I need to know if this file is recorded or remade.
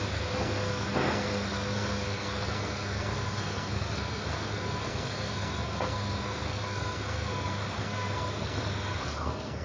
remade